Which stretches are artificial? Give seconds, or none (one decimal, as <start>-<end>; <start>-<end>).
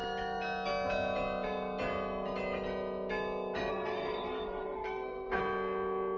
3.7-5.4